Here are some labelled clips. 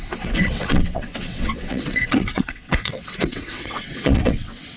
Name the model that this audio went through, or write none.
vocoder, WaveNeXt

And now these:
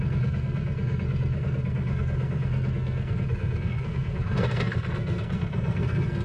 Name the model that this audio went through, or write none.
codec, SNAC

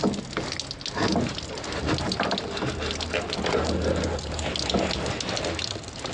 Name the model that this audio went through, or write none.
none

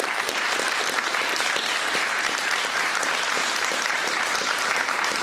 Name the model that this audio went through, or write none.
vocoder, BigVGAN v2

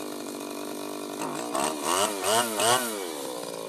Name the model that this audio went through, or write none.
none